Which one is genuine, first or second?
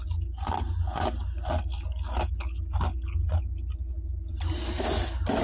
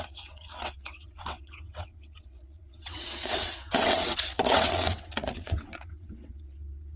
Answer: first